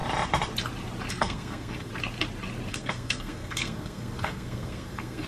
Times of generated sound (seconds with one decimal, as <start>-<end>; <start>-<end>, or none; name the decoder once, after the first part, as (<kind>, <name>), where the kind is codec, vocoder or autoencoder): 1.1-1.9 (codec, SNAC); 2.7-5.3